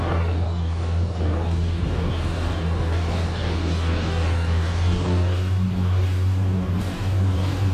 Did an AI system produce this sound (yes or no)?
yes